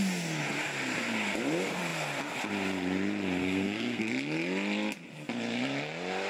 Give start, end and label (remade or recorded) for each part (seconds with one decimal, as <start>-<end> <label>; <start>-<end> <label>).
0.0-3.4 recorded; 3.4-4.1 remade; 4.1-6.3 recorded